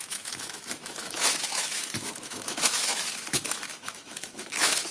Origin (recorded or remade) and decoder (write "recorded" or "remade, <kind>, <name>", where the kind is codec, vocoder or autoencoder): remade, autoencoder, DAC-VAE